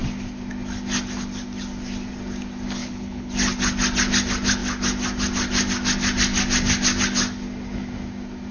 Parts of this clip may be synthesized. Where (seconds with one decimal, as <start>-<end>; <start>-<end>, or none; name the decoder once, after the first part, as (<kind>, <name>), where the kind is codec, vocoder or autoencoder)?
2.8-3.3 (codec, HILCodec)